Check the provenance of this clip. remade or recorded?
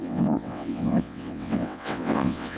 remade